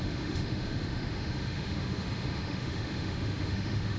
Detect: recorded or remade remade